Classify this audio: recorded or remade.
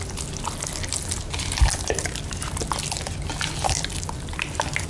recorded